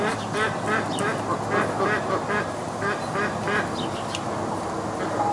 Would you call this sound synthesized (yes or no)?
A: no